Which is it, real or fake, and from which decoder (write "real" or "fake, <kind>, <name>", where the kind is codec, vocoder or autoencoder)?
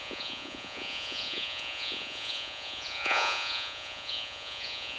fake, vocoder, Vocos